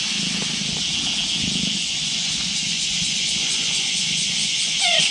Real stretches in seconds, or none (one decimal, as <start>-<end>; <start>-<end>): 0.0-1.8